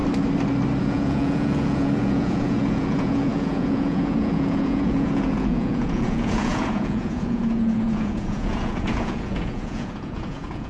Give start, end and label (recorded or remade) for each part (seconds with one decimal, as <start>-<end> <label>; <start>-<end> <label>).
0.0-0.8 recorded; 0.8-10.7 remade